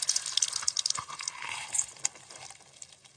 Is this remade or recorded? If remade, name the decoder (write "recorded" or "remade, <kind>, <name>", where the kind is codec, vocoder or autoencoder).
recorded